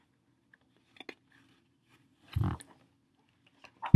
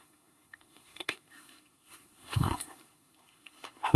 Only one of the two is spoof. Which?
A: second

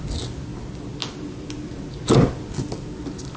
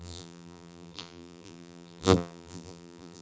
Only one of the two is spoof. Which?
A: second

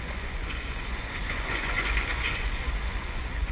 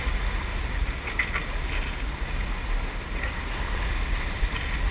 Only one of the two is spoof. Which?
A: first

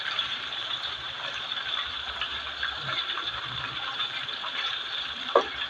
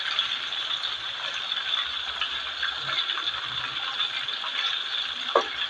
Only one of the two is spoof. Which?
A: first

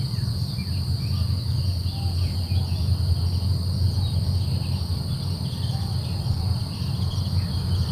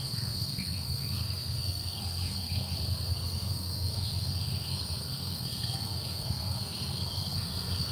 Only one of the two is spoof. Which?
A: second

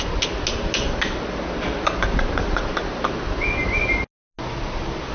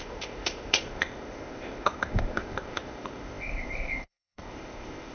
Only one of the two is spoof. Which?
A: second